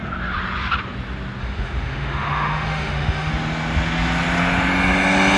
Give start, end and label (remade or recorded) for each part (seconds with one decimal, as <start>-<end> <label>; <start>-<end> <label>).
0.0-1.4 recorded; 1.4-3.3 remade; 3.3-5.4 recorded